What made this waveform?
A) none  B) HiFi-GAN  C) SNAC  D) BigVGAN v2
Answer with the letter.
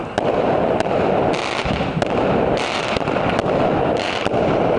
A